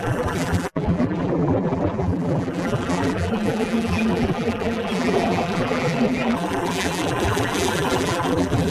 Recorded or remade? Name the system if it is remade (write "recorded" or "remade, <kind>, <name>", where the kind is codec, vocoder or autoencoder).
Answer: remade, vocoder, BigVGAN v2